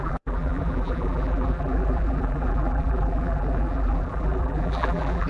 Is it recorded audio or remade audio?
remade